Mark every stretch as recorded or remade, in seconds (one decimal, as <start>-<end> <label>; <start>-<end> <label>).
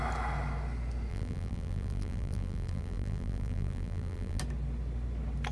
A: 0.0-1.1 recorded; 1.1-4.4 remade; 4.4-5.5 recorded